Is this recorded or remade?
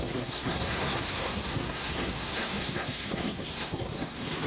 remade